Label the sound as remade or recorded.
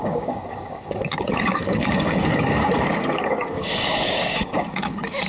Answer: remade